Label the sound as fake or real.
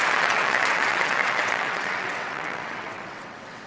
fake